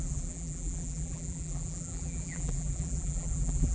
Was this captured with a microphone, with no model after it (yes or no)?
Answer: no